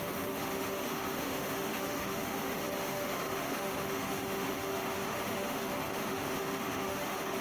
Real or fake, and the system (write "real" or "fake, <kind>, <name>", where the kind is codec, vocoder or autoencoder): fake, autoencoder, DAC-VAE